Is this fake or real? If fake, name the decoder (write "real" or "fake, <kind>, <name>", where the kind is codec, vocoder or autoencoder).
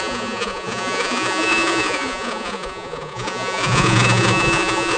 fake, vocoder, Vocos